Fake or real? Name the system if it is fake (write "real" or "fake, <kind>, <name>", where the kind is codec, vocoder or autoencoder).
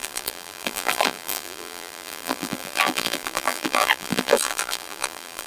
fake, vocoder, BigVGAN v2